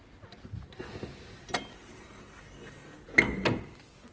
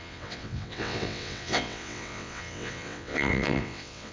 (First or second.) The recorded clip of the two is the first